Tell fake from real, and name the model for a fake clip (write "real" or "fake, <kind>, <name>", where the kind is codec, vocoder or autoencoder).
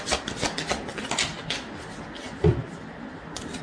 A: real